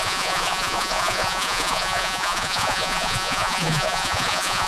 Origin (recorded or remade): remade